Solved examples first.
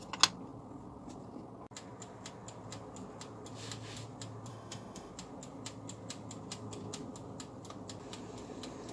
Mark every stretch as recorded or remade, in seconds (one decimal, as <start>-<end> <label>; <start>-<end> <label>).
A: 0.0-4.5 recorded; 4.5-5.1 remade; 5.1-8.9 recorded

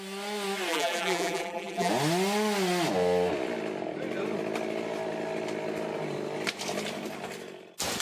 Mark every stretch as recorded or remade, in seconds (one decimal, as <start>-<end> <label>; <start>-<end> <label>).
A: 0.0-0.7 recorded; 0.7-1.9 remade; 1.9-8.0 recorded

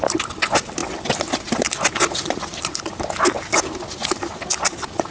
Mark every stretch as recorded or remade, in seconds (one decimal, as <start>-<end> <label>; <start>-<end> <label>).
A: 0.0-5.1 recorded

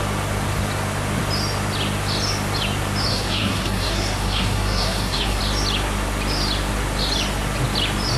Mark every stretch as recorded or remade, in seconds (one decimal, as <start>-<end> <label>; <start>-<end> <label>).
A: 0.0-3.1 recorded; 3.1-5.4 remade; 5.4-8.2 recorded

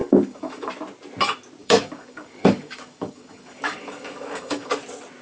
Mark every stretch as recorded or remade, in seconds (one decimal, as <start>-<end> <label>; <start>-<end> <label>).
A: 0.0-0.7 remade; 0.7-1.6 recorded; 1.6-4.7 remade; 4.7-5.2 recorded

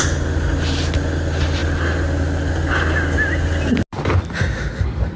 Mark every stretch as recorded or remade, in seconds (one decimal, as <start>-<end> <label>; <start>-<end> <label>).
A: 0.0-5.2 recorded

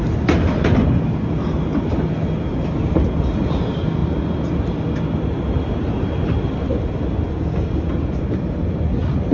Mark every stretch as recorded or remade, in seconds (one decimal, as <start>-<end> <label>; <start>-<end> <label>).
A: 0.0-9.3 recorded

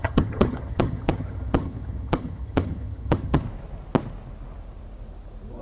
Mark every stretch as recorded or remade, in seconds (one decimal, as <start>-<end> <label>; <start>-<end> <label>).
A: 0.0-3.4 remade; 3.4-5.6 recorded